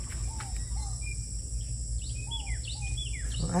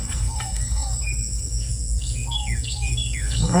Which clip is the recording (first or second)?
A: first